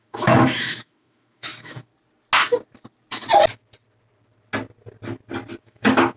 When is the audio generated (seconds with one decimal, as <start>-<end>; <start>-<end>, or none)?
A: 0.0-1.9; 5.6-6.2